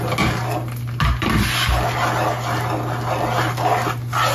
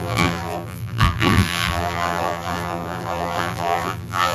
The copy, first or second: second